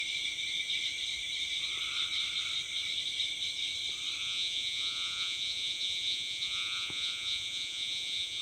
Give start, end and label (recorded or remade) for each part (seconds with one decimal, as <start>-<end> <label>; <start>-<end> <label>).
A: 0.0-4.2 recorded; 4.2-8.4 remade